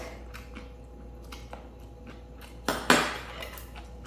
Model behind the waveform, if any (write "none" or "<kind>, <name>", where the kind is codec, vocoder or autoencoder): none